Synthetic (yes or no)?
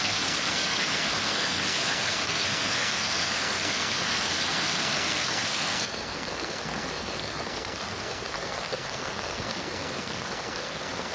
yes